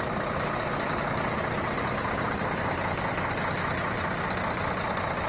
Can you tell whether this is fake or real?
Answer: real